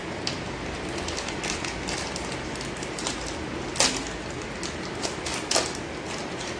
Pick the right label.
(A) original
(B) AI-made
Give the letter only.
A